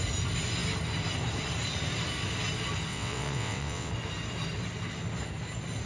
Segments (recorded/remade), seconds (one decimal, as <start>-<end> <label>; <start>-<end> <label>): 0.0-2.9 recorded; 2.9-3.9 remade; 3.9-5.9 recorded